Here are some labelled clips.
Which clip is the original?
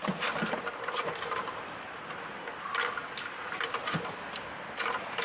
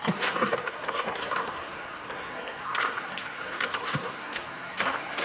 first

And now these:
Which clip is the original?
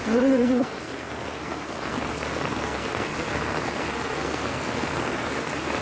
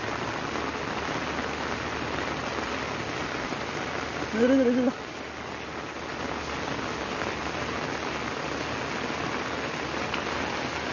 second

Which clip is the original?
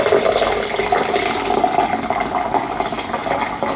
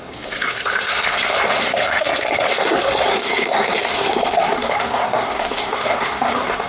first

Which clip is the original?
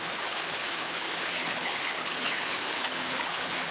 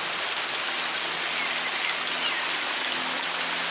second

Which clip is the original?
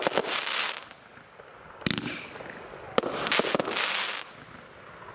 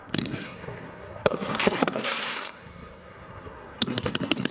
first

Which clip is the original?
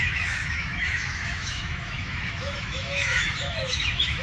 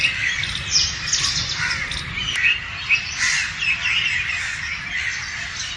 second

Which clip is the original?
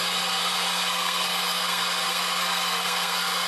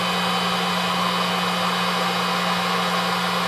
second